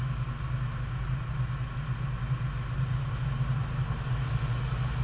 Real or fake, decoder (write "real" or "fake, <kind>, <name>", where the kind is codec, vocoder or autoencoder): real